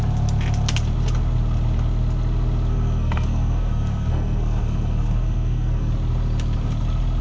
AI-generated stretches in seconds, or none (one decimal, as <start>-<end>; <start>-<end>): 2.7-5.9

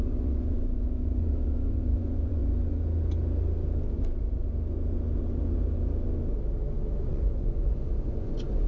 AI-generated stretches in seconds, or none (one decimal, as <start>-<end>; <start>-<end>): 0.0-2.4; 7.1-8.7

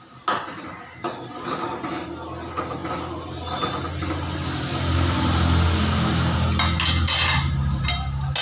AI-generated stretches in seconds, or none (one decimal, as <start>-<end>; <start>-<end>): none

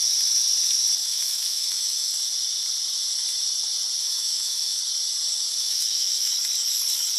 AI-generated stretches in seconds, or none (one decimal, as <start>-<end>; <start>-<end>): 1.0-2.1; 4.0-4.8; 5.5-6.3

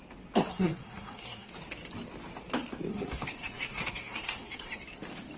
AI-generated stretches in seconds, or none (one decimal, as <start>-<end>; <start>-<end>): 0.5-1.5; 2.9-4.8

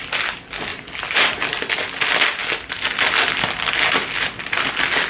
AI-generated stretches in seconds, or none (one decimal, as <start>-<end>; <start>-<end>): none

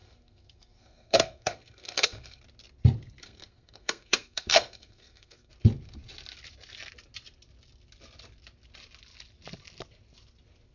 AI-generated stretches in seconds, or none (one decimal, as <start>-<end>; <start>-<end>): 0.0-2.4; 3.2-5.5